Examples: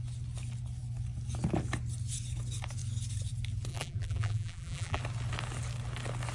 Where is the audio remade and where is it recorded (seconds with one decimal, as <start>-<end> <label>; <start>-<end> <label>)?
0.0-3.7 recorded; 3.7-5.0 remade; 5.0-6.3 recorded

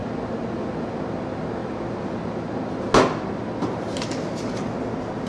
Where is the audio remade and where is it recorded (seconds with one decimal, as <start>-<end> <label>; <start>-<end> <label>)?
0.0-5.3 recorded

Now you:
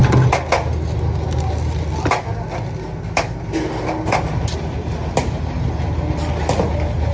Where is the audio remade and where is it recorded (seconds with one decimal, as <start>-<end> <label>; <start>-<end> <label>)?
0.0-7.1 recorded